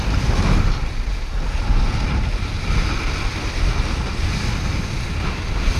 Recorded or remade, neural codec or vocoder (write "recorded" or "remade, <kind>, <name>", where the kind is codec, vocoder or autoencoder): recorded